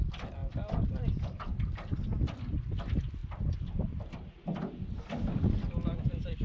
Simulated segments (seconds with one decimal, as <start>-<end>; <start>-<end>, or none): 0.0-3.2; 5.9-6.4